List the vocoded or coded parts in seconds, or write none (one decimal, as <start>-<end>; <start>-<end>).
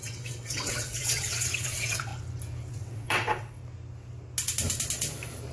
0.0-2.1; 2.7-3.6